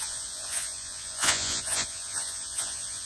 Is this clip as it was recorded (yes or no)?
no